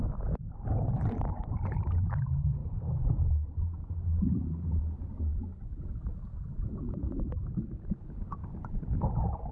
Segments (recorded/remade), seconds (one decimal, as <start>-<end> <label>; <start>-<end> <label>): 0.0-2.6 remade; 2.6-4.8 recorded; 4.8-5.3 remade; 5.3-5.8 recorded; 5.8-9.5 remade